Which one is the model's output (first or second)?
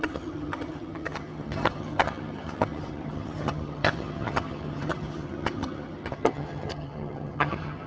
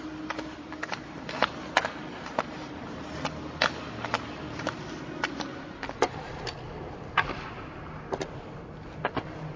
first